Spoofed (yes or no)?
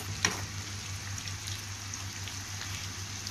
no